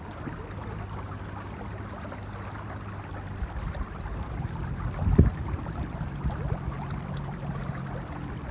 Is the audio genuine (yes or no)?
yes